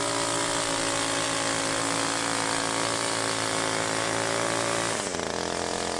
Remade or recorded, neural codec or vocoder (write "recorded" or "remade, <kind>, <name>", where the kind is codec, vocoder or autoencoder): recorded